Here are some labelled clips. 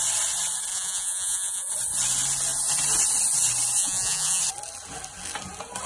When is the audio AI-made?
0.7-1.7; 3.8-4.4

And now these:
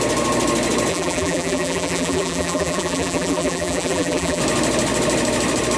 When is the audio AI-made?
0.9-4.4